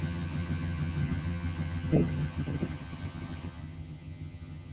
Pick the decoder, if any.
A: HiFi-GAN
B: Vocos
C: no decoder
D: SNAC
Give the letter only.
A